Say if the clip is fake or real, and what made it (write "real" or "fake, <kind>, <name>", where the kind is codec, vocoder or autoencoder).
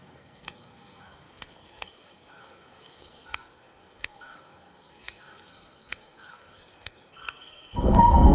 fake, codec, SNAC